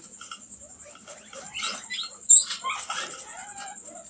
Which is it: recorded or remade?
recorded